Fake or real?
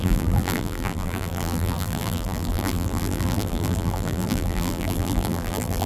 fake